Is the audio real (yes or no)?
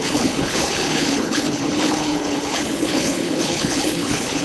no